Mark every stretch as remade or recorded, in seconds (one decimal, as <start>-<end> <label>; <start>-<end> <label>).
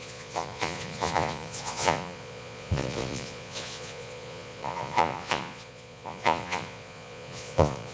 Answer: 0.0-7.9 remade